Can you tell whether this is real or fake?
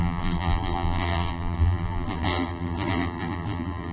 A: fake